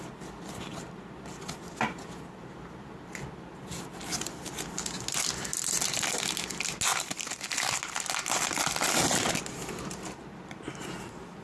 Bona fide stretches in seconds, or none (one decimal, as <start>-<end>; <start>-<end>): 0.0-11.4